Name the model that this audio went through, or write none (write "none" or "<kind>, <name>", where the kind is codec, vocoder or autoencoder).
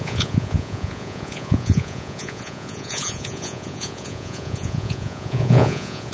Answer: vocoder, Vocos